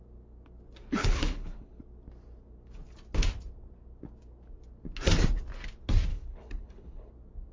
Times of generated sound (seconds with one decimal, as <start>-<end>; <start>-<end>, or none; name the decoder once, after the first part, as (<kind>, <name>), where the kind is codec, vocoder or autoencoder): 1.0-1.8 (codec, HILCodec); 6.1-7.1